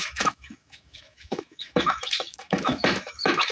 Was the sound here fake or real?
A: fake